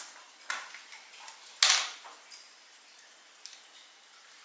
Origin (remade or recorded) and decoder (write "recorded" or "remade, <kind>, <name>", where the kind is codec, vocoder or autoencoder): recorded